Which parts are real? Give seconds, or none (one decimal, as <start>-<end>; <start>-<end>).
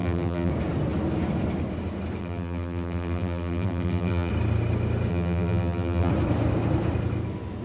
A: 0.5-2.2; 4.3-5.1; 6.1-7.6